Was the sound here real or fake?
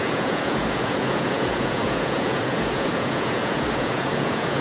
fake